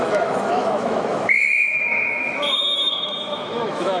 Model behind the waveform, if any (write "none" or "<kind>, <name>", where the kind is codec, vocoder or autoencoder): autoencoder, DAC-VAE